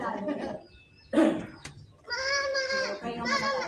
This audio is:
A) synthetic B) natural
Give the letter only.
B